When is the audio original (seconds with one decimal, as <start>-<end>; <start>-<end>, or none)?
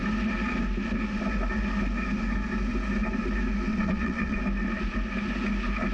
0.0-3.7; 4.4-5.9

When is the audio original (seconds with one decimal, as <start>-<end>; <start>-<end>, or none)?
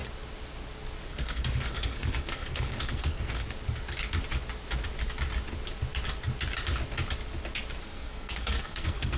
0.0-1.1; 3.4-7.8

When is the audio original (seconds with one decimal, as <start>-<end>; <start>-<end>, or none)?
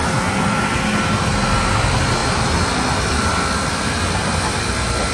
0.0-5.1